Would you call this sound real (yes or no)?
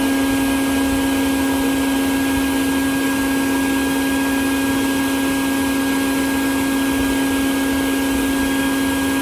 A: yes